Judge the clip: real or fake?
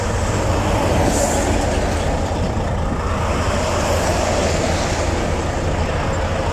real